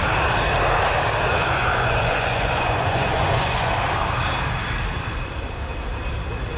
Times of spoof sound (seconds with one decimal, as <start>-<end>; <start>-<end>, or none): 1.3-3.7